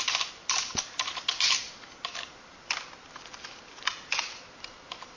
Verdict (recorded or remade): recorded